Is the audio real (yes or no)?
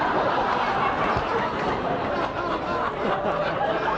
yes